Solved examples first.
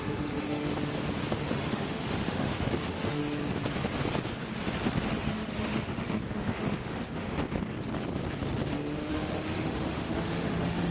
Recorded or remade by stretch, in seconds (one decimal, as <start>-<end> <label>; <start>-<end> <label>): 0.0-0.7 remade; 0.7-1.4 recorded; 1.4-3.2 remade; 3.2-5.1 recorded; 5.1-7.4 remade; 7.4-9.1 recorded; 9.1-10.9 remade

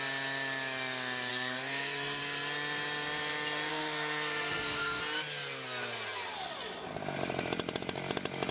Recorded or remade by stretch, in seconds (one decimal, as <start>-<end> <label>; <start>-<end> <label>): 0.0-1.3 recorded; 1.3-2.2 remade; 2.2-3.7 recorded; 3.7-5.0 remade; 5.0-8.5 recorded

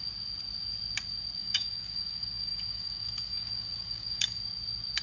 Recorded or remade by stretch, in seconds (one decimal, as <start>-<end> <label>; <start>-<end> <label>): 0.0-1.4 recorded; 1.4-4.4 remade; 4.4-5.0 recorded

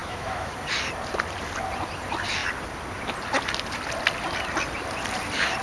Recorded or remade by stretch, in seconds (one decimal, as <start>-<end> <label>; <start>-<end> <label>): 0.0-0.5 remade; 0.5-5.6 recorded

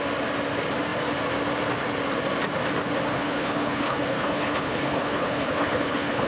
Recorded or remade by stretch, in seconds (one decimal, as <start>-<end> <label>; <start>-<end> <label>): 0.0-3.1 recorded; 3.1-6.3 remade

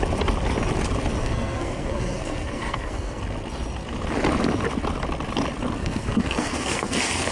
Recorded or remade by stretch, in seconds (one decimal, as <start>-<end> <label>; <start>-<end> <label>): 0.0-1.2 recorded; 1.2-3.2 remade; 3.2-5.8 recorded; 5.8-7.3 remade

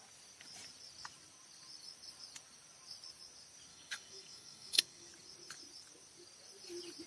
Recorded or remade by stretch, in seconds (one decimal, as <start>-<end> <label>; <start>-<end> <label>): 0.0-3.7 recorded; 3.7-5.1 remade; 5.1-7.1 recorded